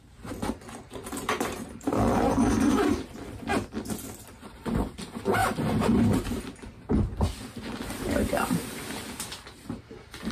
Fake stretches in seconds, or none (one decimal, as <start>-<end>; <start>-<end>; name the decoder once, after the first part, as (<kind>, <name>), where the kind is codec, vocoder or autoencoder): 1.0-2.4 (vocoder, BigVGAN v2); 5.4-6.4